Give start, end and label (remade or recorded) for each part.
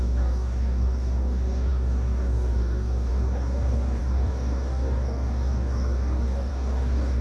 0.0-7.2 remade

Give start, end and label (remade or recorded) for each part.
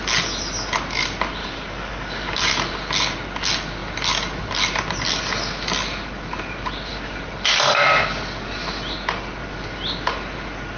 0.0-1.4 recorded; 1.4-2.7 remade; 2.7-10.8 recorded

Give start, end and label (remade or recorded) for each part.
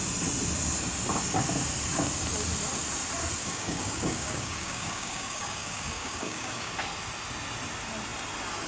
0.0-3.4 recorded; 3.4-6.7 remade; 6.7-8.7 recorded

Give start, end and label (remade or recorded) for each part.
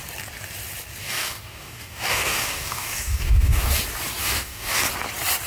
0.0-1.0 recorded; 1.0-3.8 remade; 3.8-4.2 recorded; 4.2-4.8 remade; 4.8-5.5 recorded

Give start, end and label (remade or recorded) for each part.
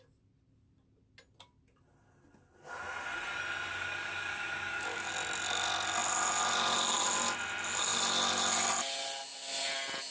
0.0-3.7 recorded; 3.7-5.1 remade; 5.1-10.1 recorded